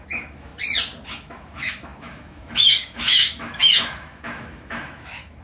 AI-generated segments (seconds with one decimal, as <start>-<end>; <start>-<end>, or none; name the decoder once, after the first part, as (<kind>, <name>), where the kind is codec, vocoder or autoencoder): 0.0-0.5 (autoencoder, DAC-VAE); 1.1-5.4